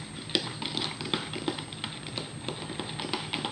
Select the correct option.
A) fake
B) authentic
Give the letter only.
B